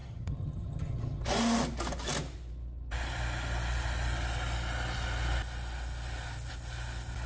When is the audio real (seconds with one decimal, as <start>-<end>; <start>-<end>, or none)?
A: 1.2-7.3